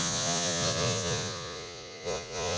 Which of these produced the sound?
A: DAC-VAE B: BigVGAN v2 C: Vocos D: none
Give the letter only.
C